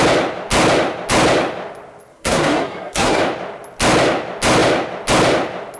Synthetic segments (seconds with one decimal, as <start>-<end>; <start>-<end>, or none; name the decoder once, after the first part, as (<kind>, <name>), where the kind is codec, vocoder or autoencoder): 2.1-3.2 (codec, SNAC)